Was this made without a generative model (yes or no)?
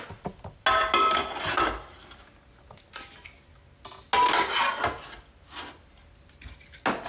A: yes